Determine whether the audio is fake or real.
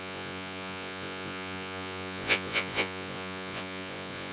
fake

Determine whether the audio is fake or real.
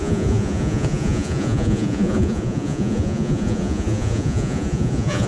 fake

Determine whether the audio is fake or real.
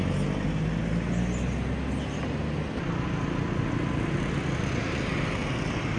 real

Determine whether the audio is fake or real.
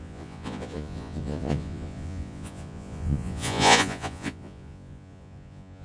fake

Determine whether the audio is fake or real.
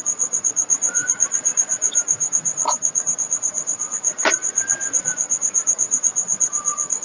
fake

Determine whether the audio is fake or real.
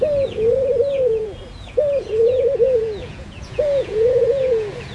fake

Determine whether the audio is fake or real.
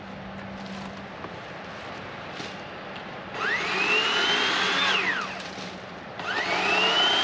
real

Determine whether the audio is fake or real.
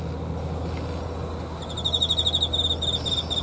real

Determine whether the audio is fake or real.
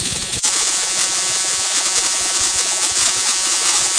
fake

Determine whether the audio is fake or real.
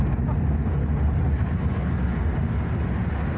real